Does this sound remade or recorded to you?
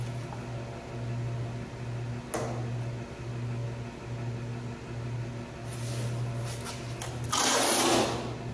recorded